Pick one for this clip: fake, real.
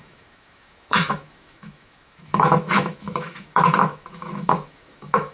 fake